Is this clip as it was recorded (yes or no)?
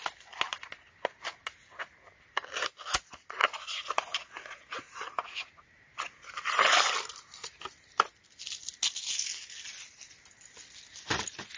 yes